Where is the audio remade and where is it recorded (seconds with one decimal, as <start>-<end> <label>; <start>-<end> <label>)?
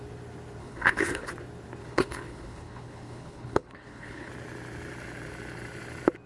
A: 0.0-0.6 recorded; 0.6-1.3 remade; 1.3-1.8 recorded; 1.8-4.3 remade; 4.3-6.3 recorded